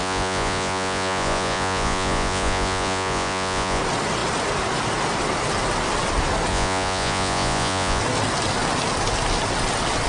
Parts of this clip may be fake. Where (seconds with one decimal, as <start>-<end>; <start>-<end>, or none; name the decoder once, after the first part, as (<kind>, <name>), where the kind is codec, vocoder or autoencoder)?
0.0-3.8 (vocoder, Vocos); 6.5-8.0